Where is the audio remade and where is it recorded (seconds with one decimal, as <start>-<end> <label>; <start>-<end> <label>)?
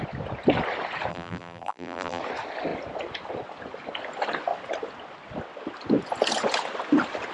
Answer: 0.0-1.1 recorded; 1.1-2.2 remade; 2.2-7.3 recorded